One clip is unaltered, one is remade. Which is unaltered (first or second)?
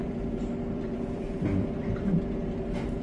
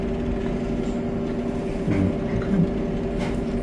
second